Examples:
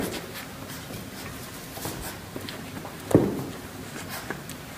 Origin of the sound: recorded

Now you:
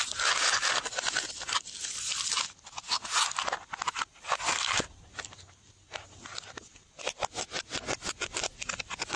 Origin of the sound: recorded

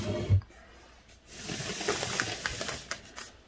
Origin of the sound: recorded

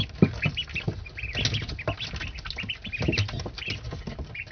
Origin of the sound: recorded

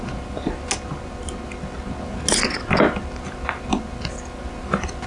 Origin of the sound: recorded